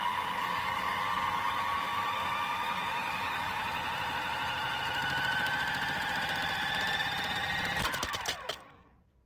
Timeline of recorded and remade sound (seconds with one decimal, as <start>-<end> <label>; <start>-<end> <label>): 0.0-3.6 remade; 3.6-8.5 recorded; 8.5-9.3 remade